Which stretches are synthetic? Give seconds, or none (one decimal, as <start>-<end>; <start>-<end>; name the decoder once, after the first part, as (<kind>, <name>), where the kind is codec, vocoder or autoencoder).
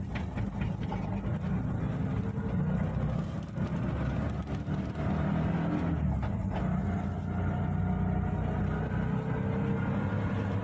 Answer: none